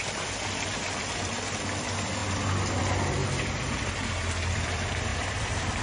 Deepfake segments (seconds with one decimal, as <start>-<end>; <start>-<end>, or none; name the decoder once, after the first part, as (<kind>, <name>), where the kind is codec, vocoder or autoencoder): 3.2-3.9 (vocoder, BigVGAN v2); 5.1-5.8